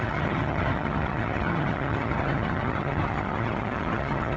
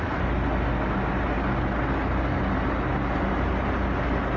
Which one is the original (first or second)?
second